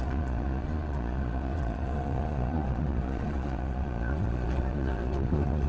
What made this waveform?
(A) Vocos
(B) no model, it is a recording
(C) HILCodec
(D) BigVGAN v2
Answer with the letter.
A